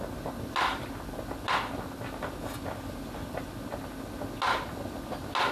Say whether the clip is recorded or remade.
recorded